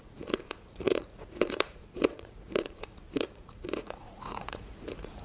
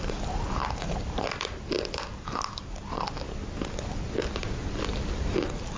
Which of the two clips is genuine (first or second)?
second